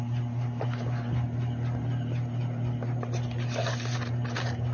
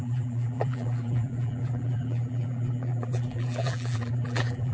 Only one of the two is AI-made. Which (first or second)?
second